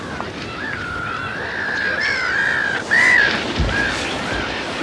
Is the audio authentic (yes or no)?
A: yes